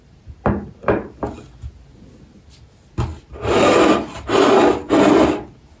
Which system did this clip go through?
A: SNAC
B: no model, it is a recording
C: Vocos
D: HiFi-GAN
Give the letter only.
B